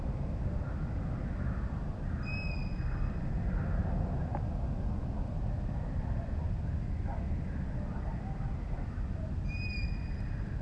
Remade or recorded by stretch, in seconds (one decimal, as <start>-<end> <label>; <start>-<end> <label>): 0.0-10.6 recorded